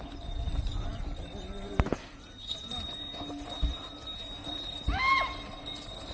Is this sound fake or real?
real